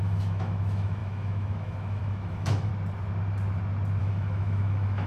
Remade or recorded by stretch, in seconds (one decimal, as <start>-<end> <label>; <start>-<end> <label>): 0.0-2.7 remade; 2.7-4.0 recorded; 4.0-5.1 remade